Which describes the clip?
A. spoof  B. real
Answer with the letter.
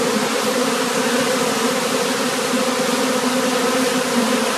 B